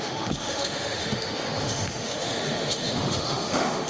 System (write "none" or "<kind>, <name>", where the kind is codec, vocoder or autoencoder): autoencoder, DAC-VAE